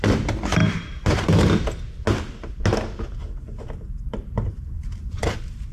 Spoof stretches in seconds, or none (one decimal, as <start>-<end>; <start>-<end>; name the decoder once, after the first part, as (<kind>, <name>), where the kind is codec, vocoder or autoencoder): 0.0-0.6 (vocoder, BigVGAN v2); 4.0-5.7